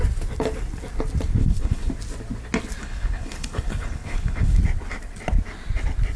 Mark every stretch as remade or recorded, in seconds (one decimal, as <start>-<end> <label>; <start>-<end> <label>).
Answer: 0.0-1.4 recorded; 1.4-1.9 remade; 1.9-2.8 recorded; 2.8-4.6 remade; 4.6-6.2 recorded